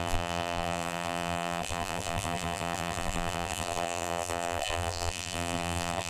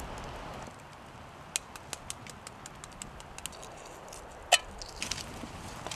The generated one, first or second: first